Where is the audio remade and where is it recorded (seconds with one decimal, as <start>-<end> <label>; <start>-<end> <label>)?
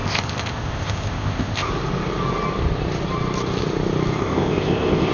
0.0-1.7 remade; 1.7-4.2 recorded; 4.2-5.1 remade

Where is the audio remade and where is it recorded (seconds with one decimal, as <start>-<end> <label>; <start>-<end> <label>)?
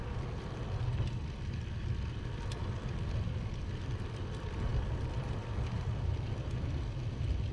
0.0-7.5 recorded